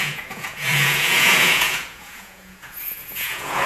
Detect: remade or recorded remade